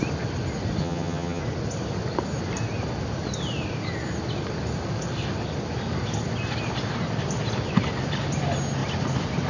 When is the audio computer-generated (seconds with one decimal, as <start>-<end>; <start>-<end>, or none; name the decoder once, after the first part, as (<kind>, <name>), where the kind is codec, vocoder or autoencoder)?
0.8-1.4 (vocoder, HiFi-GAN)